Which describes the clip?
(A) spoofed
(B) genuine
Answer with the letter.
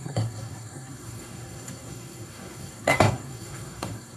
A